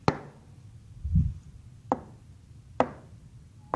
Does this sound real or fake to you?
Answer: real